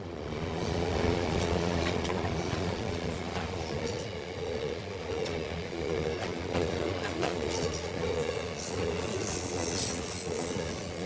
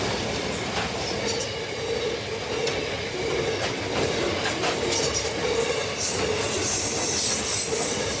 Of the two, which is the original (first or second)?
second